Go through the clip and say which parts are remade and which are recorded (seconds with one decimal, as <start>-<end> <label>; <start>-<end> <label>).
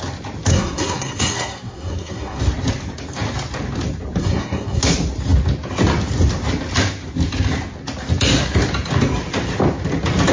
0.0-0.5 recorded; 0.5-2.4 remade; 2.4-4.2 recorded; 4.2-4.8 remade; 4.8-10.3 recorded